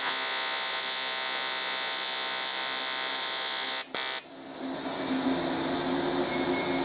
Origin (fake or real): real